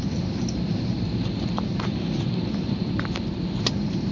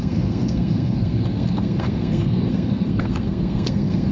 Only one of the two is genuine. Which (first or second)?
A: first